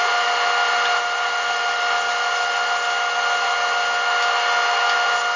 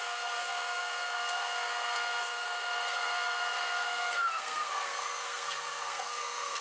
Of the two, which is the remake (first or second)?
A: second